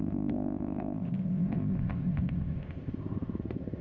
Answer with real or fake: fake